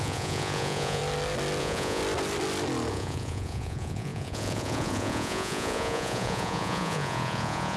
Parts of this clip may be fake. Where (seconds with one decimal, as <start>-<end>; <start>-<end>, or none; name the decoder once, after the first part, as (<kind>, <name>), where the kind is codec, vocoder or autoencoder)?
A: 0.0-1.0 (vocoder, Vocos); 1.6-2.0; 2.9-7.8